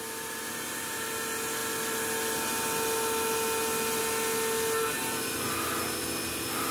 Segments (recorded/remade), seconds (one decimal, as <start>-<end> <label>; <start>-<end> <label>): 0.0-6.7 recorded